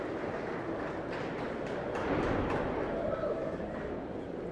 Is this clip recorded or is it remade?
recorded